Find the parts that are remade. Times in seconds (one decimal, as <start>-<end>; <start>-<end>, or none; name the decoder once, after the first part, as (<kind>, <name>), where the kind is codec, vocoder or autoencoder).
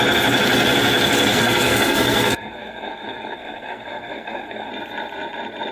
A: 1.3-4.7 (codec, SNAC)